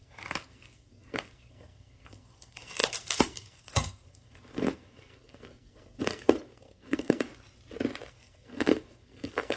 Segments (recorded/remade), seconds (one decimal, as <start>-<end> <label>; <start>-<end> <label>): 0.0-7.3 remade; 7.3-8.1 recorded; 8.1-9.6 remade